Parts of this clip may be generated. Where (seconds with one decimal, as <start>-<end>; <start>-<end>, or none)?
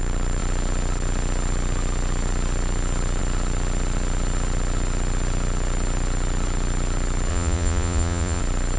7.3-8.4